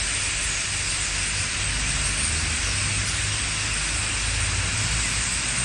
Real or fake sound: real